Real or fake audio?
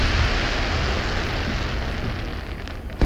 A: real